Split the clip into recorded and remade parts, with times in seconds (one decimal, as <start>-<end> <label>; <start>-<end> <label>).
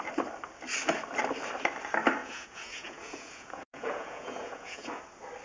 0.0-2.2 recorded; 2.2-5.0 remade; 5.0-5.4 recorded